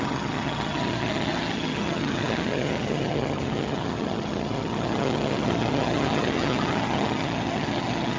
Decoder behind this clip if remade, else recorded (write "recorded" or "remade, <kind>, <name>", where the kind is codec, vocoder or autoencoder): remade, vocoder, HiFi-GAN